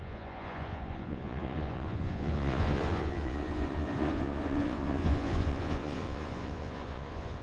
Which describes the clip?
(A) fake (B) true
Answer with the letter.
A